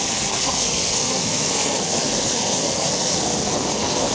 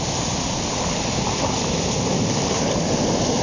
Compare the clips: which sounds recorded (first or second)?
second